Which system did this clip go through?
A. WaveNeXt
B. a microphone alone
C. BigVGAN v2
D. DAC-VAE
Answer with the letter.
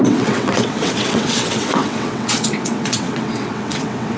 A